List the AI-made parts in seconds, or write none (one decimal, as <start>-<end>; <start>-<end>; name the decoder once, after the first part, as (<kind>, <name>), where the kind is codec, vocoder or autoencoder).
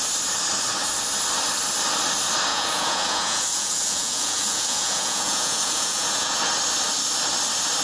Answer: 2.5-6.4 (vocoder, Vocos)